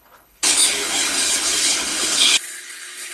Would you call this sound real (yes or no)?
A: no